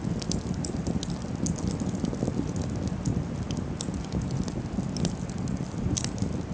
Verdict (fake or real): real